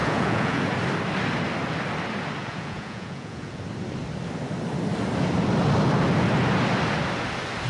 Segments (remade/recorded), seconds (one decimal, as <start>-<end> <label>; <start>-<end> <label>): 0.0-0.6 remade; 0.6-2.4 recorded; 2.4-3.6 remade; 3.6-7.7 recorded